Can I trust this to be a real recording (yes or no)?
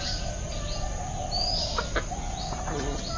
yes